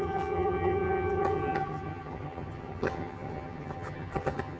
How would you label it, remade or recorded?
remade